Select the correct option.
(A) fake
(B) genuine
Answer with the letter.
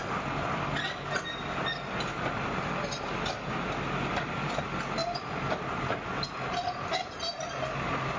B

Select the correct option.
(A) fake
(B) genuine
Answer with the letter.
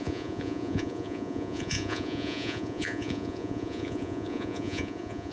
A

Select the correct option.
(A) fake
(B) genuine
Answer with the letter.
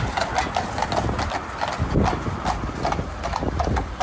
B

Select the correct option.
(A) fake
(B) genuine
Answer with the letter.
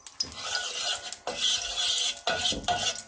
B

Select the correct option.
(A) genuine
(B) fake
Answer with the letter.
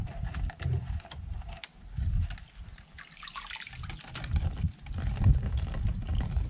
A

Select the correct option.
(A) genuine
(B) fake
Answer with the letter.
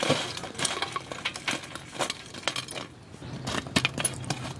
A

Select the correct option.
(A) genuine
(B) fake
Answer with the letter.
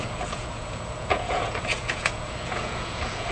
B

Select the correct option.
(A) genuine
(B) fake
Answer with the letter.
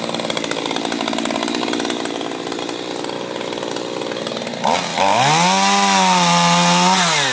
A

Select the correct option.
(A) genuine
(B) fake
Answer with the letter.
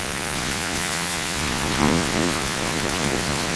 B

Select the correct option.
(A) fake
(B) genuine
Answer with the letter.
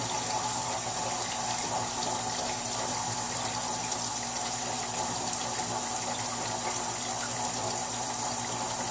B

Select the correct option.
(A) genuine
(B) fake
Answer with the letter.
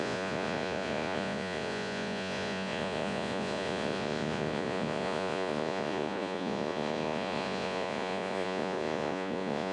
B